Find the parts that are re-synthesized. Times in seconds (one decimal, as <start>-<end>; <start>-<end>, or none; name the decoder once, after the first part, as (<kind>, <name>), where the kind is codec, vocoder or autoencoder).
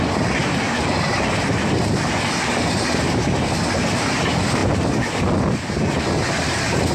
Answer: 0.4-1.8 (vocoder, BigVGAN v2)